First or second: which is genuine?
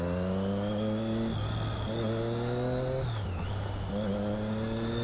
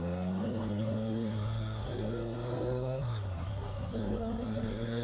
first